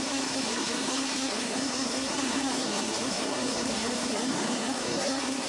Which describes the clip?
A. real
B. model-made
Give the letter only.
B